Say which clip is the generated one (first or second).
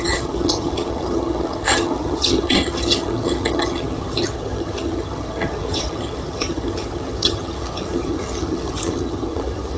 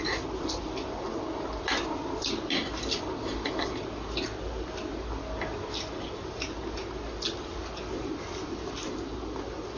first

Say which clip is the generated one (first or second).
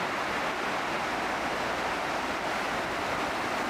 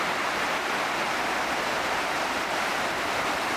second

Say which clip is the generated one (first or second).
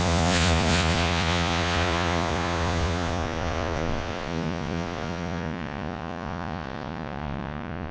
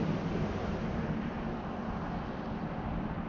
first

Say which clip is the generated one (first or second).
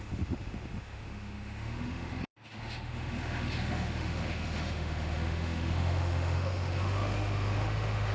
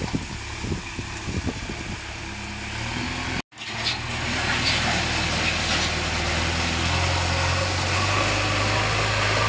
first